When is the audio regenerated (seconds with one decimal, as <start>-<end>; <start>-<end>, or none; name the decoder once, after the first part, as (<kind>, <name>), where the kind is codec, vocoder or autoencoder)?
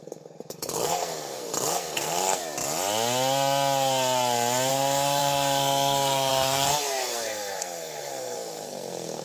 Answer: 0.0-2.4 (codec, SNAC); 4.7-9.2